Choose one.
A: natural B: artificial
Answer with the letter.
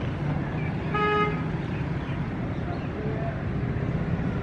A